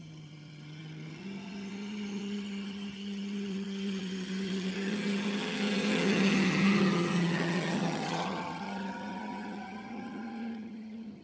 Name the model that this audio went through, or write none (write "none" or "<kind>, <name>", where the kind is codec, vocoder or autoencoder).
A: vocoder, HiFi-GAN